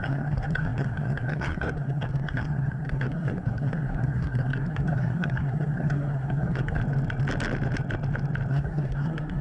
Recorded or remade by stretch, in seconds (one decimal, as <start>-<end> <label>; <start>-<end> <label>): 0.0-6.8 remade; 6.8-8.5 recorded; 8.5-9.4 remade